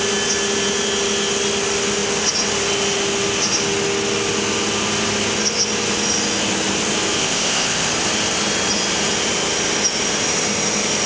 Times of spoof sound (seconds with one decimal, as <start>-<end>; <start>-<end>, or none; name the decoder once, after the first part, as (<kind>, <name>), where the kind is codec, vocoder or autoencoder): 7.2-7.9 (codec, ZipCodec)